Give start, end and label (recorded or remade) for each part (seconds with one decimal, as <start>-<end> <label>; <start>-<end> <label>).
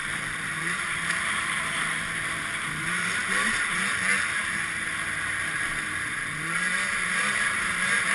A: 0.0-8.1 remade